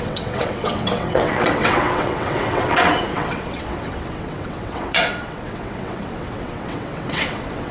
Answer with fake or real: fake